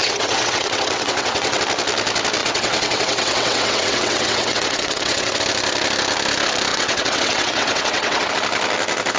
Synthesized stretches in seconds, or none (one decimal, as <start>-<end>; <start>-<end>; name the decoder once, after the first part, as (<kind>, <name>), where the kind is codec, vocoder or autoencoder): 0.0-1.6 (vocoder, WaveNeXt); 2.4-5.4; 6.7-8.3